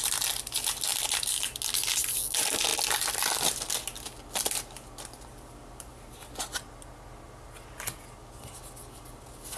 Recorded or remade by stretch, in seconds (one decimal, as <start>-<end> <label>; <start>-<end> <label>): 0.0-9.6 recorded